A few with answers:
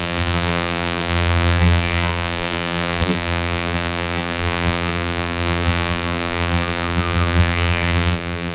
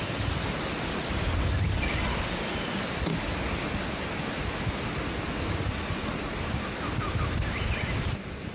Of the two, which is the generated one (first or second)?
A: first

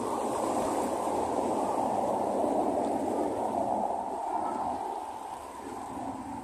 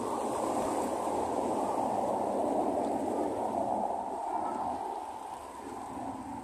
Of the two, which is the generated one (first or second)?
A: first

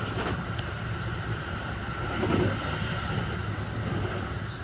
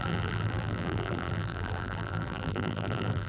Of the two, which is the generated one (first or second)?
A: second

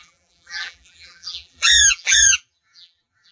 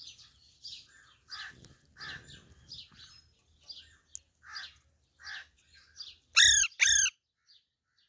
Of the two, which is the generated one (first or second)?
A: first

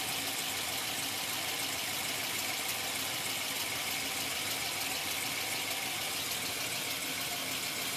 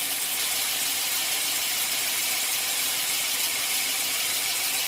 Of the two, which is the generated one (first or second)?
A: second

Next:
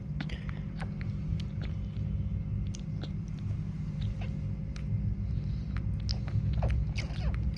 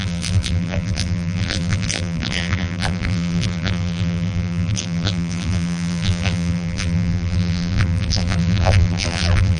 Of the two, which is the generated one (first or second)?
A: second